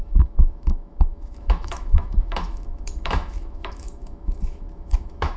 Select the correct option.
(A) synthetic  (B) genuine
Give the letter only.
A